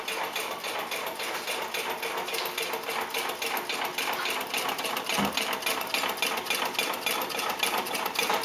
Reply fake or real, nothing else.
real